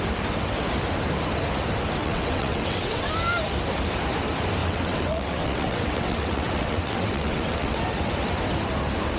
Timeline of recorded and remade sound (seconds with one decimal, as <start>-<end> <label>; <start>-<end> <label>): 0.0-2.0 recorded; 2.0-3.1 remade; 3.1-4.6 recorded; 4.6-7.8 remade; 7.8-9.2 recorded